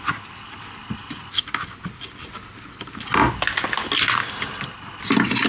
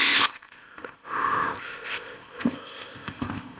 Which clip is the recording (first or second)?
first